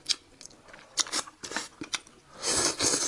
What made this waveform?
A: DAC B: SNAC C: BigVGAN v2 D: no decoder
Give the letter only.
D